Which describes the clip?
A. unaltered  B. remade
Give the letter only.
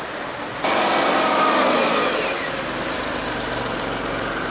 B